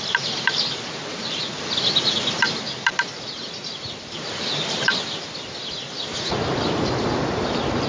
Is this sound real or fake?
real